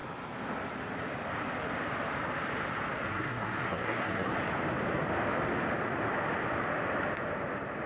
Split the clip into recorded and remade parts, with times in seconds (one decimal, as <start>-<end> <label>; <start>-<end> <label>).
0.0-3.1 recorded; 3.1-4.3 remade; 4.3-7.9 recorded